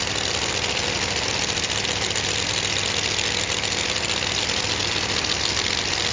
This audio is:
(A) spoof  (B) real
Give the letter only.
B